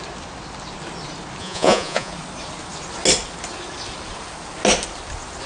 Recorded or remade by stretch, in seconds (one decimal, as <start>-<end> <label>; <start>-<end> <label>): 0.0-1.4 recorded; 1.4-2.1 remade; 2.1-5.5 recorded